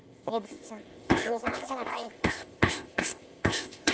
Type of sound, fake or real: fake